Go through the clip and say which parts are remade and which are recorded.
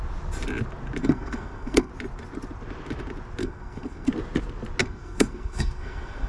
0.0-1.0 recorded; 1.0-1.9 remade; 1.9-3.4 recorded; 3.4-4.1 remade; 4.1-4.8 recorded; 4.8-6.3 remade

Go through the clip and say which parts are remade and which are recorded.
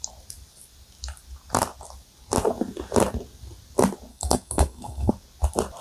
0.0-4.1 recorded; 4.1-5.1 remade; 5.1-5.8 recorded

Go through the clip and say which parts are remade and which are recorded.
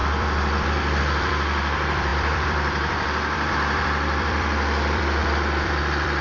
0.0-6.2 remade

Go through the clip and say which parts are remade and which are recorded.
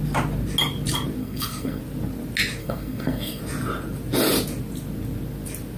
0.0-1.2 recorded; 1.2-1.8 remade; 1.8-2.6 recorded; 2.6-3.4 remade; 3.4-5.8 recorded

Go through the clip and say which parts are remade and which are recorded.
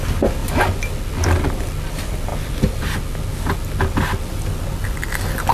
0.0-5.5 recorded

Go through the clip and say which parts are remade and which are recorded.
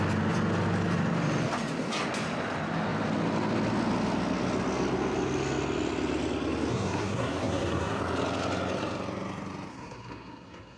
0.0-6.7 recorded; 6.7-8.0 remade; 8.0-9.7 recorded; 9.7-10.8 remade